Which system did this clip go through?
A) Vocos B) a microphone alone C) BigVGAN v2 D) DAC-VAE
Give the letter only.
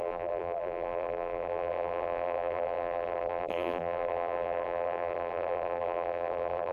C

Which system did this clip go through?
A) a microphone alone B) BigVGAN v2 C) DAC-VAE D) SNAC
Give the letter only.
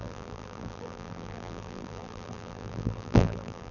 B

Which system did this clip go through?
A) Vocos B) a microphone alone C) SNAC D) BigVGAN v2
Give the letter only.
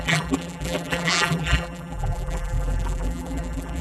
D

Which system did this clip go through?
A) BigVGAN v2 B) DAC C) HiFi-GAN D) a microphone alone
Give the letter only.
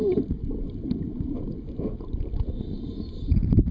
D